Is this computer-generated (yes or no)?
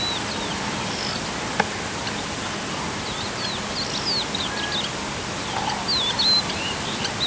no